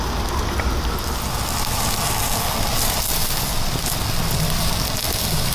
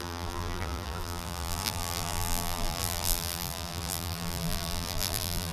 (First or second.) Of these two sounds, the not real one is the second